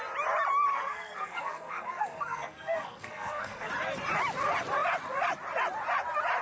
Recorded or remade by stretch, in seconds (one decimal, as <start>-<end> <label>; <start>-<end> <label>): 0.0-0.7 recorded; 0.7-3.7 remade; 3.7-6.4 recorded